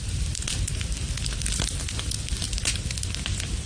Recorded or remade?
recorded